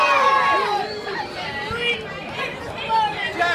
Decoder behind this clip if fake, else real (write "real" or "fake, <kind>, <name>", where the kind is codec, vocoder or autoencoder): real